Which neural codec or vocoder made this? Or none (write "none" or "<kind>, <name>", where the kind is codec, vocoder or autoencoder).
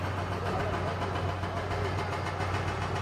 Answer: none